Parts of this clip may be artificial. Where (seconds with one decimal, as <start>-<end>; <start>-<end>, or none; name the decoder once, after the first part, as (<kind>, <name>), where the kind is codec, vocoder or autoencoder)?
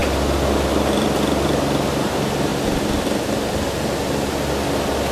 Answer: 0.7-2.5 (vocoder, BigVGAN v2)